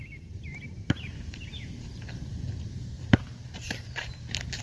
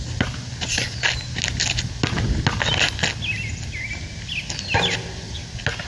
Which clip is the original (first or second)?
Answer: second